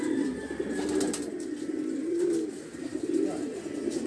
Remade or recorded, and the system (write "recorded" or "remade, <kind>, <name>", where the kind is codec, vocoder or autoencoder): recorded